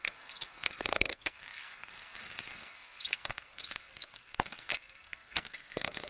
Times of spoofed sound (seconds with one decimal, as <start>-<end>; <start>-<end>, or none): 0.0-6.1